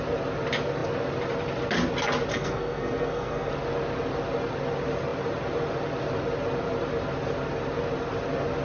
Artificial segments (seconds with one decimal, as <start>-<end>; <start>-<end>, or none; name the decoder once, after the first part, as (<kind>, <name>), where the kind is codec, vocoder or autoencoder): 2.3-3.5 (codec, SNAC)